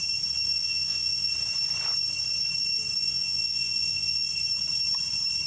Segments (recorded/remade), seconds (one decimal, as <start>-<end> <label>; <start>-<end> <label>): 0.0-0.5 recorded; 0.5-1.3 remade; 1.3-3.0 recorded; 3.0-4.2 remade; 4.2-5.5 recorded